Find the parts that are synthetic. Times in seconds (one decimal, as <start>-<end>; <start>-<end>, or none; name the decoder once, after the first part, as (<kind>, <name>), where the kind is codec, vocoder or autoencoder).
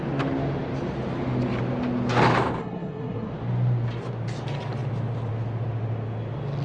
2.6-3.3 (codec, SNAC)